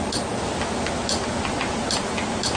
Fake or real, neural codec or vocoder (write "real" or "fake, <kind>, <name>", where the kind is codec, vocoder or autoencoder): real